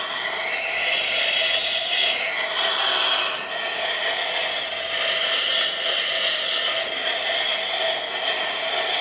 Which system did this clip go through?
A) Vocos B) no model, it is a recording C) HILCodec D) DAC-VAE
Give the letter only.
B